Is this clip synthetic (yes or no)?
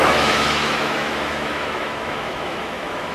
yes